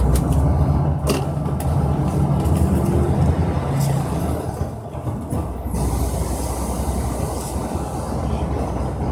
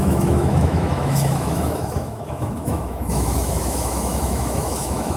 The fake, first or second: second